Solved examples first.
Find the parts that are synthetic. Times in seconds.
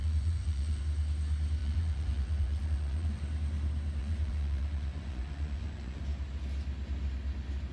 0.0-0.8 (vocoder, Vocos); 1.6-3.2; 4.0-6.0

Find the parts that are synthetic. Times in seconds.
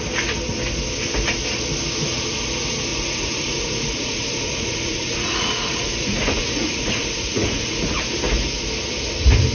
2.9-8.0 (vocoder, Vocos)